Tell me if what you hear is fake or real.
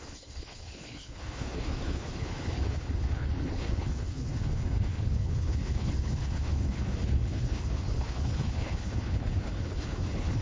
fake